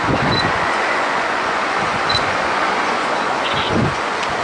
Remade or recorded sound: remade